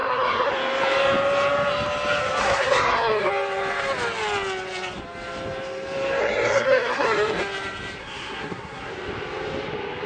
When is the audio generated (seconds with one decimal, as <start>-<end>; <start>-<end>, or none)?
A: 0.0-0.5; 2.4-3.3; 6.2-7.4; 8.0-8.9